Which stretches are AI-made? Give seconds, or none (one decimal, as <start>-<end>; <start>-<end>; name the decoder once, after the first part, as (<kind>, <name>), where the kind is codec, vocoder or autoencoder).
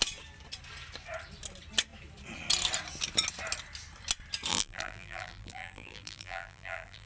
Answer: 4.5-7.1 (vocoder, BigVGAN v2)